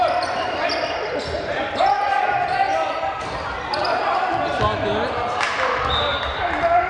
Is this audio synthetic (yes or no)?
yes